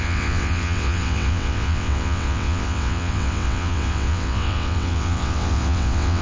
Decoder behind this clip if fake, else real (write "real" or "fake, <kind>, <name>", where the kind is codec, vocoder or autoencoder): fake, vocoder, WaveNeXt